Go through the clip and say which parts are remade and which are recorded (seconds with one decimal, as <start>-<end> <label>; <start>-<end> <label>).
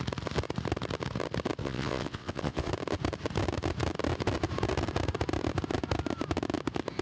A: 0.0-1.6 recorded; 1.6-2.7 remade; 2.7-7.0 recorded